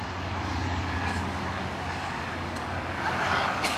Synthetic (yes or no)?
yes